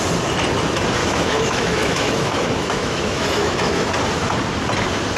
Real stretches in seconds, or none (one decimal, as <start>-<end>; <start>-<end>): 0.0-1.0; 3.9-5.2